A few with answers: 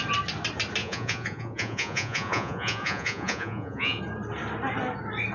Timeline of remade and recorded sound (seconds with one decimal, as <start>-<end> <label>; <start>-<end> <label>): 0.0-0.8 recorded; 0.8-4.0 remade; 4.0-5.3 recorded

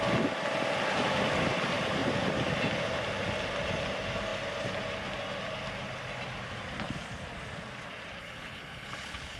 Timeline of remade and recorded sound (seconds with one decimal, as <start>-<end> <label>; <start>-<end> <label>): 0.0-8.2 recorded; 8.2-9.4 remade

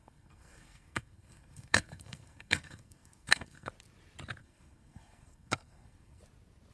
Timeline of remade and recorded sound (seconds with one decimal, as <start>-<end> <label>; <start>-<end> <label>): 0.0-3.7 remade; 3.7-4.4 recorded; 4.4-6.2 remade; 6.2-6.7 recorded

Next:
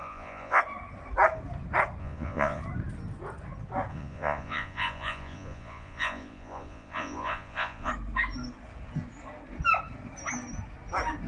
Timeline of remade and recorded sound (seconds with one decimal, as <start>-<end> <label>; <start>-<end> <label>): 0.0-0.6 remade; 0.6-2.0 recorded; 2.0-2.6 remade; 2.6-3.9 recorded; 3.9-7.9 remade; 7.9-11.3 recorded

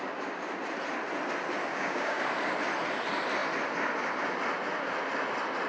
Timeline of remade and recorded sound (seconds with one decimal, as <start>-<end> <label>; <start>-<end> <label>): 0.0-1.7 recorded; 1.7-2.2 remade; 2.2-5.7 recorded

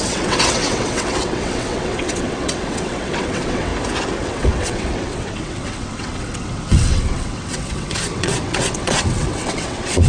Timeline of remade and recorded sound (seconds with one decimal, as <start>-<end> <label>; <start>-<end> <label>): 0.0-3.7 remade; 3.7-4.2 recorded; 4.2-10.1 remade